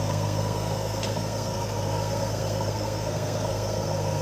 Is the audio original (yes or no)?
no